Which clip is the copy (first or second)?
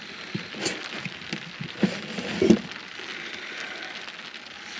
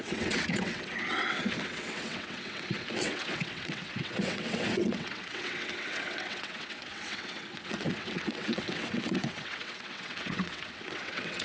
second